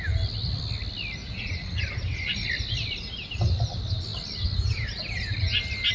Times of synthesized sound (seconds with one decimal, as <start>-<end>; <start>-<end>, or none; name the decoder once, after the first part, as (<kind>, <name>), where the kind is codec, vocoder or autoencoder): 1.2-1.8 (vocoder, Vocos)